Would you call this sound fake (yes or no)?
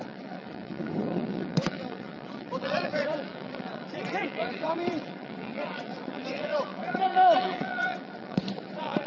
yes